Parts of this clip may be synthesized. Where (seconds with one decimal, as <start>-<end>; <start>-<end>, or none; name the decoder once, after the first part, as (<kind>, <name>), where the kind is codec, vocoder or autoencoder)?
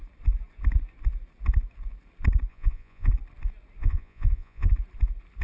2.5-3.1 (vocoder, Vocos); 3.8-4.7